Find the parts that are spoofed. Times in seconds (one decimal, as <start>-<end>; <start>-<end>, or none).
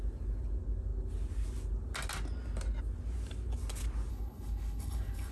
4.1-5.3